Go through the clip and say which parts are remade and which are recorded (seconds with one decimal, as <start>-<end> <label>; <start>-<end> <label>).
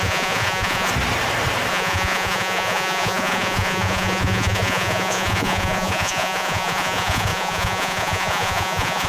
0.0-0.9 remade; 0.9-1.7 recorded; 1.7-9.1 remade